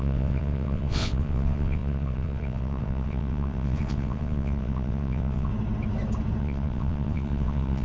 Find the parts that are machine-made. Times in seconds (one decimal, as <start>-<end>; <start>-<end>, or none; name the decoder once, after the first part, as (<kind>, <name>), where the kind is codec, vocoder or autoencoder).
0.0-5.5 (vocoder, WaveNeXt); 6.4-7.8

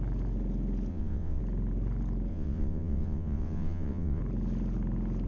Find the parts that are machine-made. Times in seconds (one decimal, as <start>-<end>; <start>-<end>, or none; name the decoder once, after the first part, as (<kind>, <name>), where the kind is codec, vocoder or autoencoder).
0.9-1.4 (vocoder, WaveNeXt); 2.3-4.2